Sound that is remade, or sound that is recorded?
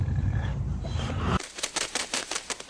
remade